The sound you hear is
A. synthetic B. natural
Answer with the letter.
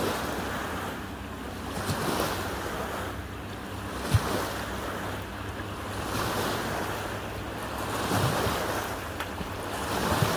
B